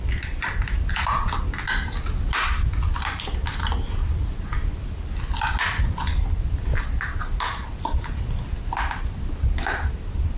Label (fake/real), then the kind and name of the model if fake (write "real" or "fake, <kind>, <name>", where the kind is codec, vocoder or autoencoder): real